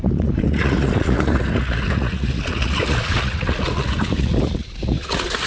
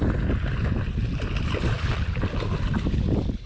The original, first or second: second